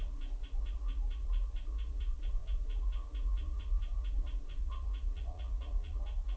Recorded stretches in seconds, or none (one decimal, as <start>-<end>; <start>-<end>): none